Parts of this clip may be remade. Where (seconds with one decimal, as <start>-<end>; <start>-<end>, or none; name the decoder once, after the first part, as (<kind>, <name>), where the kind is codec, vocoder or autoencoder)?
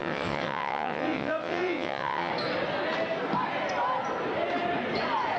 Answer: 0.0-2.3 (vocoder, WaveNeXt)